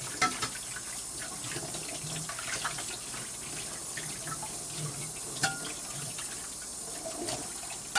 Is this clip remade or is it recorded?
recorded